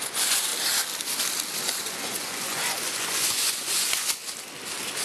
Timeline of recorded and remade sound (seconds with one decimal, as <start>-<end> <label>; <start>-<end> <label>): 0.0-0.5 remade; 0.5-1.5 recorded; 1.5-4.2 remade; 4.2-5.0 recorded